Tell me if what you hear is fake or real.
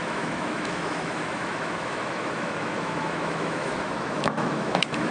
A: fake